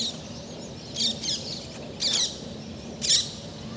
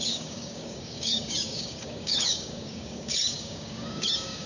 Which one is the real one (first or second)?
first